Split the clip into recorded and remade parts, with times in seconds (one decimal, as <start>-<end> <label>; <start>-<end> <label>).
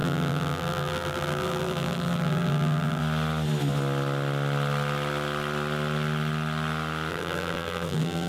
0.0-3.0 remade; 3.0-7.1 recorded; 7.1-8.3 remade